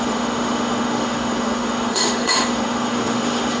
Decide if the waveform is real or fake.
fake